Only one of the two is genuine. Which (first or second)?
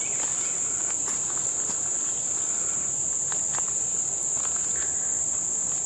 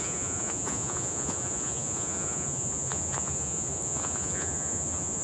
first